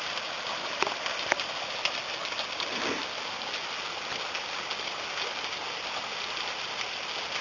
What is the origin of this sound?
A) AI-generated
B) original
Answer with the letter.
B